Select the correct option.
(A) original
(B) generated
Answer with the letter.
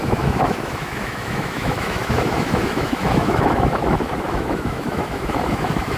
B